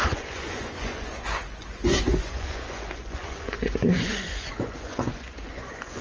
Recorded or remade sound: remade